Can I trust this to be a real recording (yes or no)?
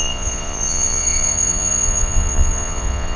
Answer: no